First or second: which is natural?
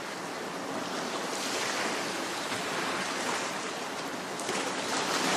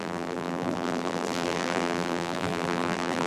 first